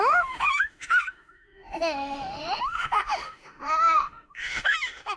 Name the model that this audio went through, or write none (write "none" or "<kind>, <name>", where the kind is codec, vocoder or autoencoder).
autoencoder, DAC-VAE